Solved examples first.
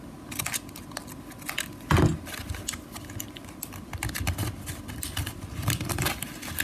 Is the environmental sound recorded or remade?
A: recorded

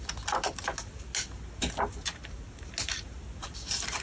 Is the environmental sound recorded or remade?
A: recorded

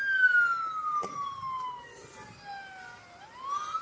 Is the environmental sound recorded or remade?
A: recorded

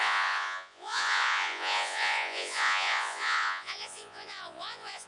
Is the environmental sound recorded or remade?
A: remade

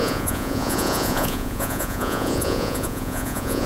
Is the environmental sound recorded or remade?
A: remade